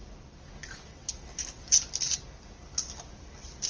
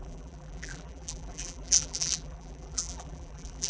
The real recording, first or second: first